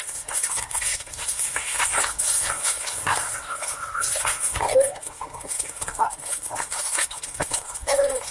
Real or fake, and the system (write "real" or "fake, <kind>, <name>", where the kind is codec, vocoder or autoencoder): fake, codec, SNAC